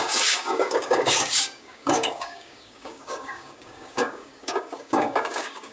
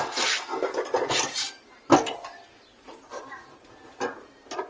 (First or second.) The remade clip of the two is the first